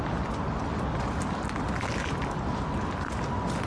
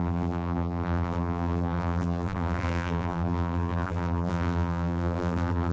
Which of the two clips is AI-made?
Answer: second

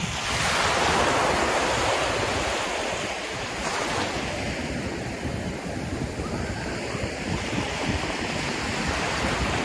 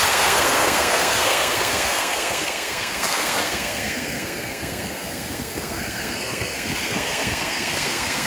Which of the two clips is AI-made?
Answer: second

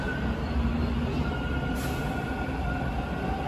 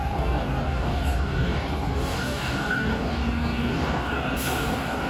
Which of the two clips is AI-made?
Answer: second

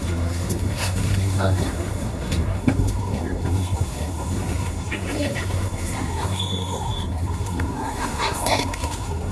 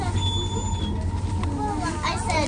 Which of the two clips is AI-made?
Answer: first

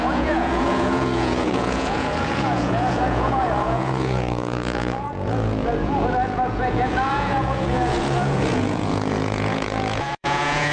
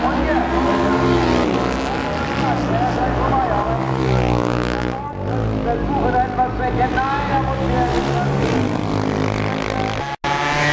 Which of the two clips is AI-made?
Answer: first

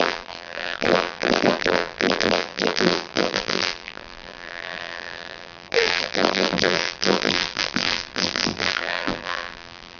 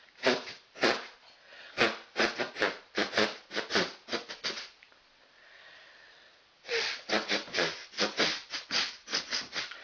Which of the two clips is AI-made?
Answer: first